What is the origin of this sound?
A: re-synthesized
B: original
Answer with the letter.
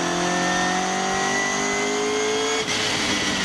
B